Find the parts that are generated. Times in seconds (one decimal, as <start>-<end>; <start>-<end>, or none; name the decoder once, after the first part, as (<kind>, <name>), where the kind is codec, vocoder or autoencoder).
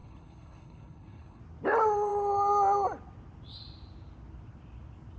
0.0-1.4 (codec, HILCodec)